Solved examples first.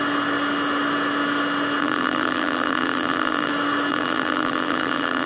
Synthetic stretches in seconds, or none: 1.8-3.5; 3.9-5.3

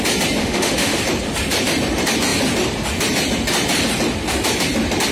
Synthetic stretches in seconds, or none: 0.4-1.0

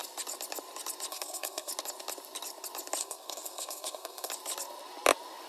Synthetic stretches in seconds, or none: 1.1-1.7; 3.0-4.3

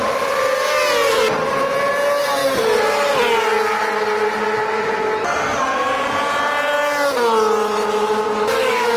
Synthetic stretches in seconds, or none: 7.6-9.0

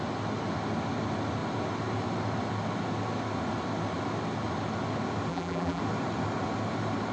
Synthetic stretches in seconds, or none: 5.3-5.8